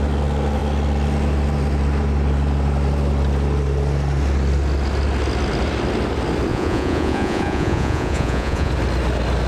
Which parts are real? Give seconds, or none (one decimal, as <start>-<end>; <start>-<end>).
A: 0.0-6.5; 8.7-9.5